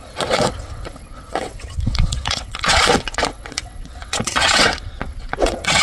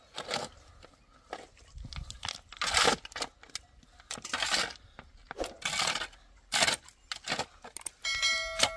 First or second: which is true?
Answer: second